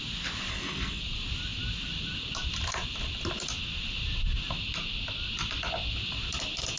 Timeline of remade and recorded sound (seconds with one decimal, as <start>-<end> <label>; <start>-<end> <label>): 0.0-0.5 recorded; 0.5-1.0 remade; 1.0-6.8 recorded